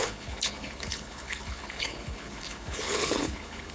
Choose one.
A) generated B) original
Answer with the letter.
A